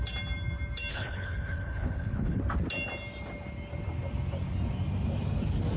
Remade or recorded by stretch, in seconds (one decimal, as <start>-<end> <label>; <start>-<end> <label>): 0.0-0.9 recorded; 0.9-2.4 remade; 2.4-5.8 recorded